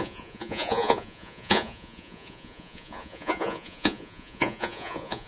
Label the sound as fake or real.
fake